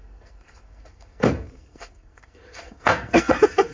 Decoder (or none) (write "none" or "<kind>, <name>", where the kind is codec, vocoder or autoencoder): codec, SNAC